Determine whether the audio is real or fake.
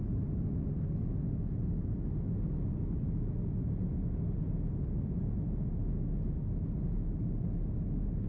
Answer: real